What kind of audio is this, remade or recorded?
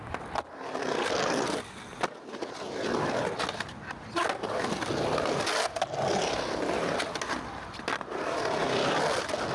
recorded